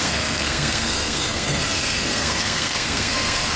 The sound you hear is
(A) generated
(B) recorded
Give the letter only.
A